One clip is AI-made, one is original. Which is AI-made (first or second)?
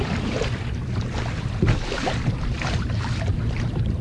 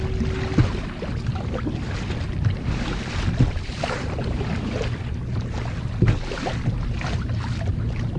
first